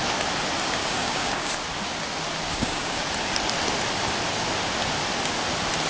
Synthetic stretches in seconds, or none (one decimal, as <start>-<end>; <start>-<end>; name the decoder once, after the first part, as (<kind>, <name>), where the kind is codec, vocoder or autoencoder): 0.8-1.5 (codec, DAC); 2.5-3.0